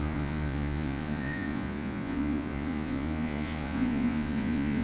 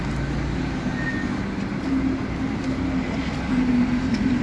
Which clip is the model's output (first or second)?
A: first